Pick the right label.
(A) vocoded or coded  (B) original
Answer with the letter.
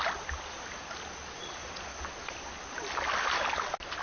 B